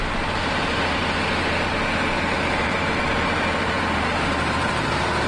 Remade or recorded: remade